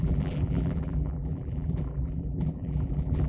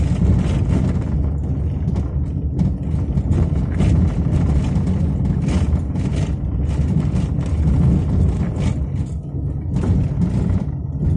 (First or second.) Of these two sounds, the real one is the second